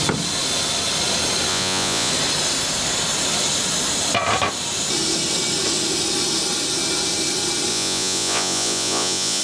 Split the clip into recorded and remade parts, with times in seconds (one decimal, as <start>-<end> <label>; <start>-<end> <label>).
0.0-1.5 recorded; 1.5-2.1 remade; 2.1-7.7 recorded; 7.7-9.4 remade